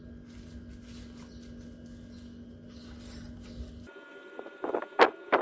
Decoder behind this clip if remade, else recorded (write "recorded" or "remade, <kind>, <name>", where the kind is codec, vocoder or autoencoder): recorded